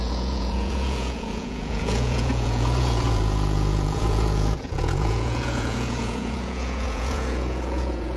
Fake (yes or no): yes